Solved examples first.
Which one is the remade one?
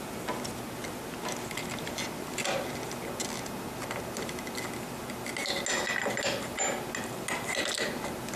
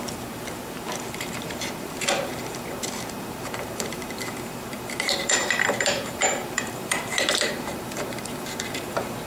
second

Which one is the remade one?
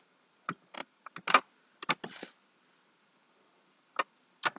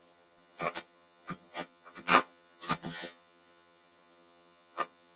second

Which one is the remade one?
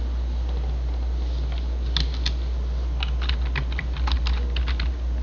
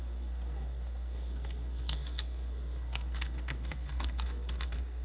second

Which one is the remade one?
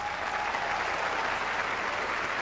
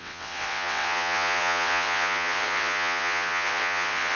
second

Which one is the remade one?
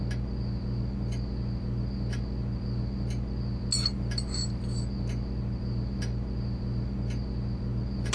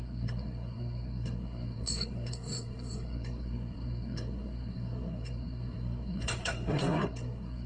second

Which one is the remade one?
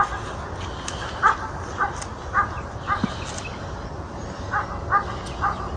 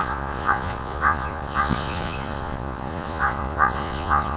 second